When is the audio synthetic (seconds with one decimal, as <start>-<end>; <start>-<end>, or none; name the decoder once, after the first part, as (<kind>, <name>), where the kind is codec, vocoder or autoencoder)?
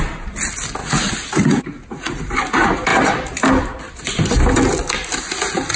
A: 0.8-2.2 (vocoder, Vocos)